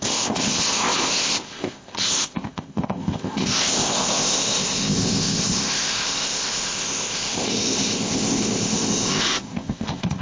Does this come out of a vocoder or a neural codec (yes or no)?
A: yes